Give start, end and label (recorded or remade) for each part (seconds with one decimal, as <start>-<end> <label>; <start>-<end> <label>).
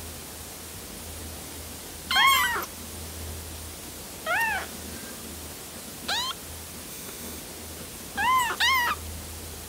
0.0-6.9 recorded; 6.9-7.4 remade; 7.4-9.7 recorded